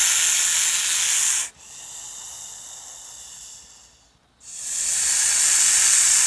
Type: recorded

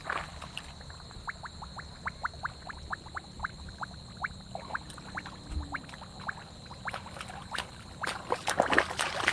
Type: recorded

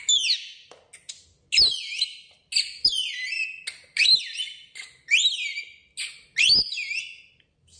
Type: recorded